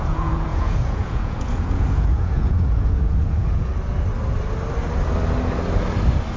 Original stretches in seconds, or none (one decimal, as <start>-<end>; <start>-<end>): 3.7-6.4